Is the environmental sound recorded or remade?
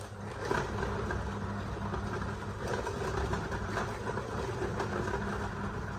recorded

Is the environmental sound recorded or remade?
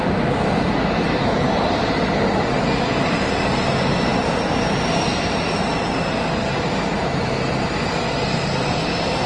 remade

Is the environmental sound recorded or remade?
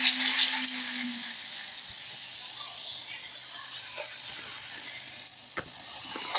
recorded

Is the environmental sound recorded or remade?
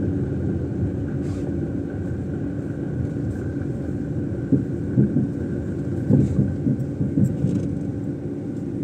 recorded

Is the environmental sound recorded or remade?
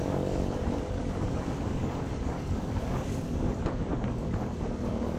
remade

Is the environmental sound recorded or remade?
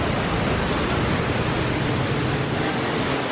recorded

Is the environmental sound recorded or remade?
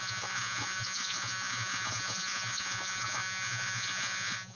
remade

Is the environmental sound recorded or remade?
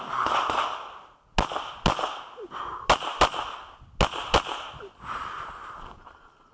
recorded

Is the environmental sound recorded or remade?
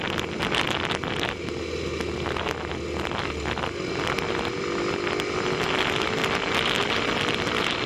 recorded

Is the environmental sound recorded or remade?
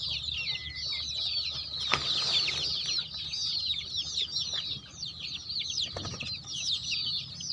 remade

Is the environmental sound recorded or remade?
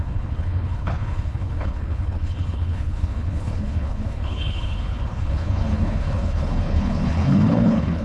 remade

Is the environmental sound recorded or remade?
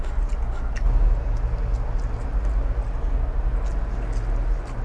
recorded